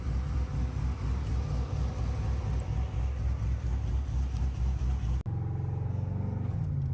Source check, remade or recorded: recorded